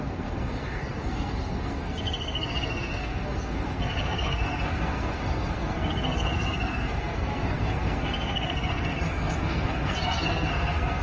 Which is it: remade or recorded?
remade